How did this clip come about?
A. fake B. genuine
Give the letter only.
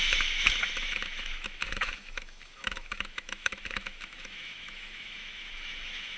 A